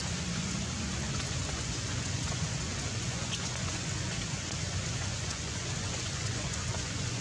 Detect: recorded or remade remade